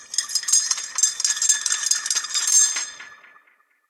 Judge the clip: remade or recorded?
recorded